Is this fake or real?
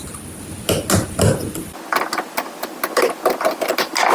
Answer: real